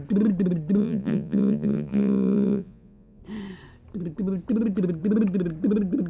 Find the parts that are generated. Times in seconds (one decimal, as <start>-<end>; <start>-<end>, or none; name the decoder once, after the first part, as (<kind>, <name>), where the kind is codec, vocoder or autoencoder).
0.8-3.2 (vocoder, Vocos)